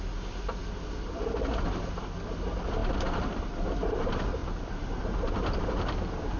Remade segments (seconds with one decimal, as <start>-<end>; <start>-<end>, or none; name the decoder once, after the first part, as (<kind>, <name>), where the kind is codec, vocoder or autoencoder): 4.4-5.7 (vocoder, BigVGAN v2)